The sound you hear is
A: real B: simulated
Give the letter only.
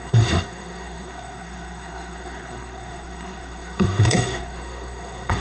B